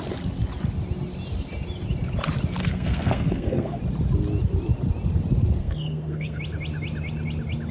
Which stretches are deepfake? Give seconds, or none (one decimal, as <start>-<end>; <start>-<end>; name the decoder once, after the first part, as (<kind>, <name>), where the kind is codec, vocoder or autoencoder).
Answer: 2.6-3.8 (codec, SNAC); 5.6-6.4